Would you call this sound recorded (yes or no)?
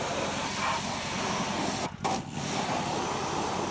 yes